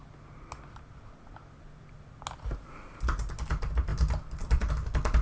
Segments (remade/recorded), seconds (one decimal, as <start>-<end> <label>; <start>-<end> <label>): 0.0-3.9 recorded; 3.9-4.7 remade; 4.7-5.2 recorded